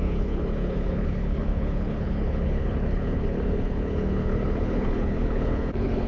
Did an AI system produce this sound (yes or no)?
yes